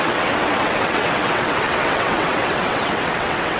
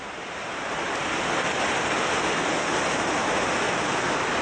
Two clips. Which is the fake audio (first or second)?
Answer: first